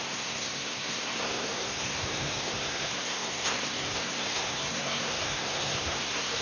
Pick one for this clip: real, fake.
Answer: fake